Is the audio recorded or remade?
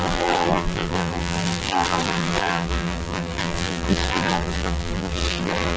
remade